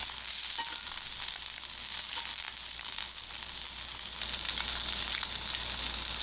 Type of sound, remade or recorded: recorded